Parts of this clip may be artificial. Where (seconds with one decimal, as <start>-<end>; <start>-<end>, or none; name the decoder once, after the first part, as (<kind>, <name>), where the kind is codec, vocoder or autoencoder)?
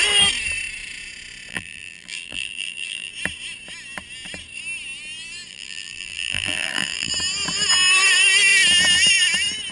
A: 1.5-3.1 (vocoder, BigVGAN v2); 5.5-7.1